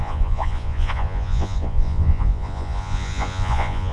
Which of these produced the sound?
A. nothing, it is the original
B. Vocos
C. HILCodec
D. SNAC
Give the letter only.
B